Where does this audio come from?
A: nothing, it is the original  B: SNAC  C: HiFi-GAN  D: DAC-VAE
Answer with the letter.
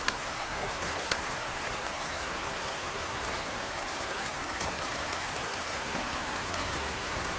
B